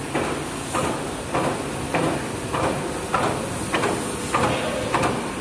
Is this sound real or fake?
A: real